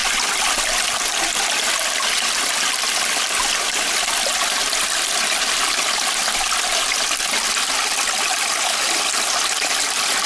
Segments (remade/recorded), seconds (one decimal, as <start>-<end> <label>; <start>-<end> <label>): 0.0-0.9 remade; 0.9-10.3 recorded